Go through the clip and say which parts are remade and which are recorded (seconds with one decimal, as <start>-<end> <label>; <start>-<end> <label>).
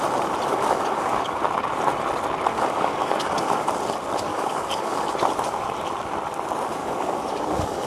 0.0-0.5 recorded; 0.5-1.4 remade; 1.4-2.5 recorded; 2.5-3.7 remade; 3.7-4.3 recorded; 4.3-5.0 remade; 5.0-6.8 recorded; 6.8-7.9 remade